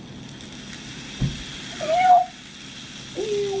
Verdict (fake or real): real